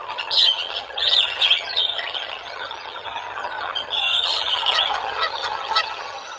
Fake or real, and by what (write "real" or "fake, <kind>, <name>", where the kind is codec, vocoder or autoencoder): fake, vocoder, HiFi-GAN